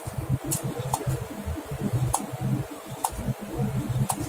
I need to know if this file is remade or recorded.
recorded